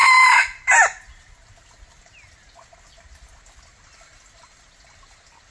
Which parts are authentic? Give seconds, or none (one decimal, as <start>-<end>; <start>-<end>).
0.0-5.5